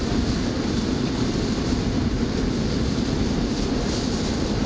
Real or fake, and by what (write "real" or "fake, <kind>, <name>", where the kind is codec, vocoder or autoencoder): fake, vocoder, BigVGAN v2